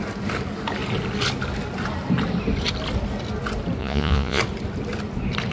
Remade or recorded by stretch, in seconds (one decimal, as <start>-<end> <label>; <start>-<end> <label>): 0.0-3.8 recorded; 3.8-4.4 remade; 4.4-5.5 recorded